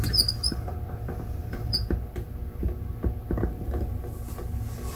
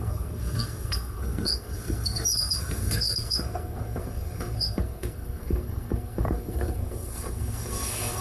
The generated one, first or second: second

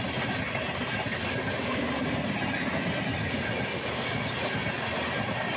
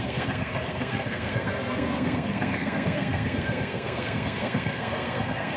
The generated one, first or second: second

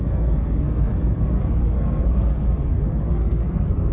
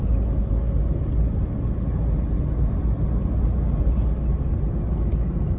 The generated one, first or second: first